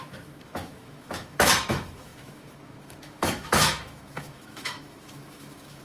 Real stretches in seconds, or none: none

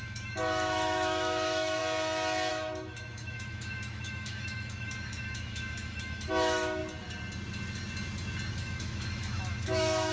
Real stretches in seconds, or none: 1.8-2.5; 6.8-8.5